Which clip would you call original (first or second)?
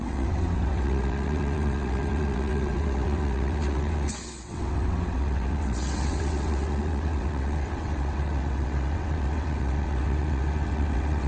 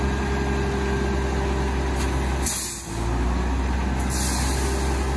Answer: second